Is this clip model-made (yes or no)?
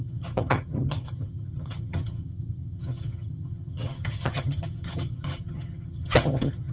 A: yes